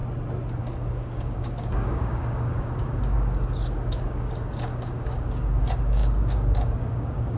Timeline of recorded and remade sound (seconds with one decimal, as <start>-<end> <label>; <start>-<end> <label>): 0.0-0.6 recorded; 0.6-7.4 remade